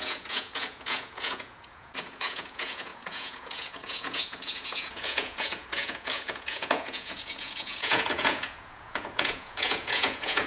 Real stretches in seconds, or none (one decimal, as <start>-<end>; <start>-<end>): none